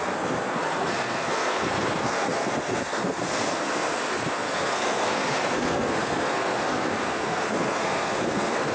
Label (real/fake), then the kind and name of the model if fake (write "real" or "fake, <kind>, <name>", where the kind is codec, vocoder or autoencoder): fake, codec, SNAC